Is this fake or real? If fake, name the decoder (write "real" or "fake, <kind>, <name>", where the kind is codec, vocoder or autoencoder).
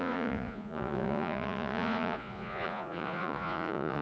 fake, vocoder, Vocos